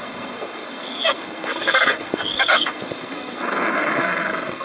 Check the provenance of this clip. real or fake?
fake